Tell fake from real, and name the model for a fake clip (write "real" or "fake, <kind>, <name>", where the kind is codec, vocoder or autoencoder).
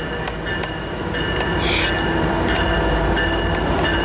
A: real